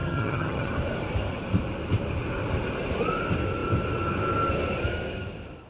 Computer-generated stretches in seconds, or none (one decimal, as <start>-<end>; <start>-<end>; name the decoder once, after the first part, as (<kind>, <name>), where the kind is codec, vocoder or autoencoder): 0.0-0.7 (vocoder, HiFi-GAN)

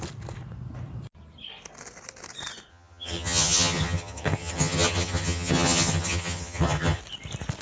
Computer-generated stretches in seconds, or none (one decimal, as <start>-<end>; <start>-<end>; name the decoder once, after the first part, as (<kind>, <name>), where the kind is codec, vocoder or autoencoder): 2.7-7.0 (vocoder, HiFi-GAN)

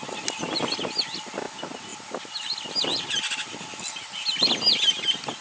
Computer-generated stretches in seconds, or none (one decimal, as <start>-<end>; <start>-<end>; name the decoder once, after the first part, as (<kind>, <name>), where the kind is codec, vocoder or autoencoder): none